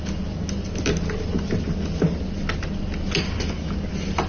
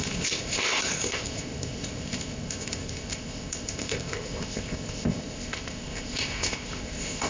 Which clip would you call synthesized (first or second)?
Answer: second